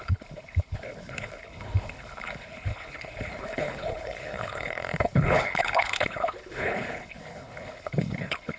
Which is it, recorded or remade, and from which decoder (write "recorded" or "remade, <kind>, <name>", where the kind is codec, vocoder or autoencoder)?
remade, codec, HILCodec